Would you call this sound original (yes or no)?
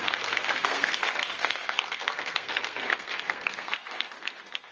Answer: no